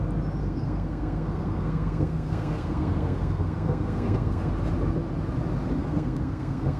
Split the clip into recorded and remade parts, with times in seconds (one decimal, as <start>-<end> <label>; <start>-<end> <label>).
0.0-0.4 recorded; 0.4-4.5 remade; 4.5-5.8 recorded; 5.8-6.8 remade